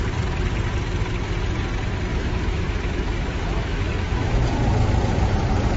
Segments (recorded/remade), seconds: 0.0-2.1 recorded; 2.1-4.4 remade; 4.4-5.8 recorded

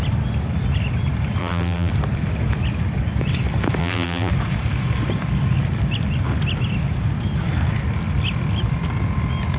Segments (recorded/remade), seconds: 0.0-1.4 recorded; 1.4-1.9 remade; 1.9-3.8 recorded; 3.8-4.3 remade; 4.3-9.6 recorded

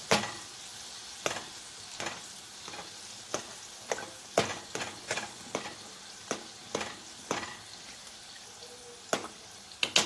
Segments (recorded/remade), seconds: 0.0-4.5 recorded; 4.5-5.5 remade; 5.5-10.1 recorded

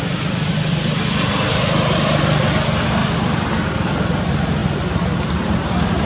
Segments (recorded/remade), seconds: 0.0-3.0 recorded; 3.0-3.5 remade; 3.5-4.6 recorded; 4.6-5.2 remade; 5.2-6.1 recorded

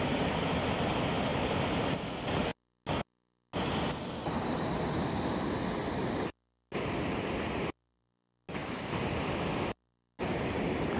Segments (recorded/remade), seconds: 0.0-1.3 recorded; 1.3-2.0 remade; 2.0-11.0 recorded